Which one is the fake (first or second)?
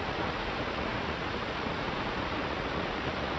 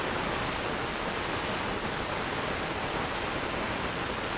first